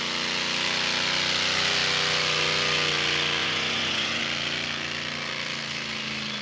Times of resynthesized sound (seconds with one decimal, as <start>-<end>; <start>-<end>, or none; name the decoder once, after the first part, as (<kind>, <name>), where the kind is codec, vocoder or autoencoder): 3.4-4.2 (vocoder, Vocos)